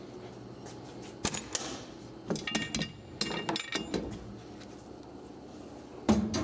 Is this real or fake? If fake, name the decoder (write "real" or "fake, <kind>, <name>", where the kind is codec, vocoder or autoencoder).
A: real